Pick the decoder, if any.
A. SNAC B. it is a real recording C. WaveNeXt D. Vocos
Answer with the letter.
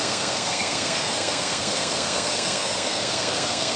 A